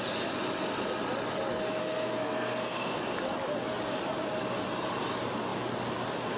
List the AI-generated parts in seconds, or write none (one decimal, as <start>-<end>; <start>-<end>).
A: 1.8-3.0